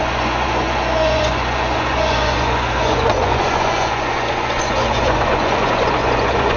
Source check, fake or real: fake